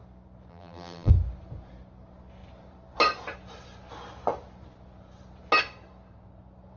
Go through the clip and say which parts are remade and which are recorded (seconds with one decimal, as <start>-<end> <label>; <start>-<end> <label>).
0.0-0.5 recorded; 0.5-1.1 remade; 1.1-6.8 recorded